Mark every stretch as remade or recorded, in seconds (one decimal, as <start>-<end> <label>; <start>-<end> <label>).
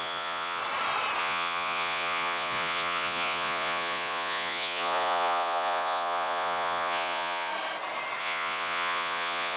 0.0-0.6 remade; 0.6-1.2 recorded; 1.2-7.5 remade; 7.5-8.2 recorded; 8.2-9.6 remade